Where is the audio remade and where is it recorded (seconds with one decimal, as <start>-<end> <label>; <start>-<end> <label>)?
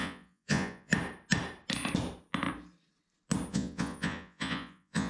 0.0-0.9 remade; 0.9-3.5 recorded; 3.5-5.1 remade